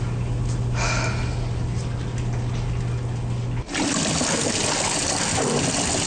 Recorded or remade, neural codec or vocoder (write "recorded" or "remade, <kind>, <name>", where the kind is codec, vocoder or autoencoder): recorded